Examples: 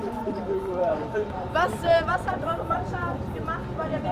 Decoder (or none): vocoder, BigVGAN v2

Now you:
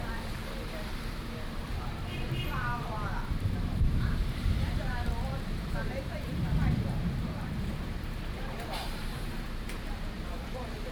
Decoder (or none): vocoder, BigVGAN v2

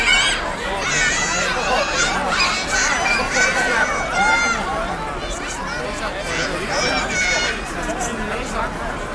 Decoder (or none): none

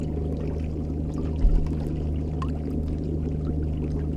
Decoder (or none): none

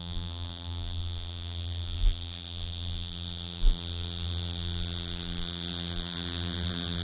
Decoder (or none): vocoder, BigVGAN v2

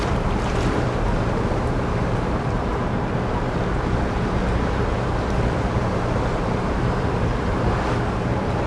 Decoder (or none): vocoder, BigVGAN v2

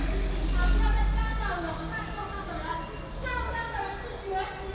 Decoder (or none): none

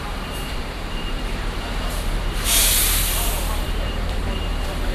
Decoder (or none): vocoder, BigVGAN v2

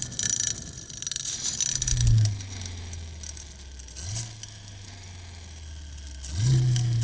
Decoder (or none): none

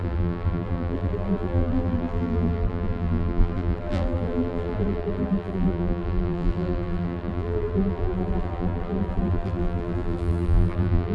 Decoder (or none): vocoder, BigVGAN v2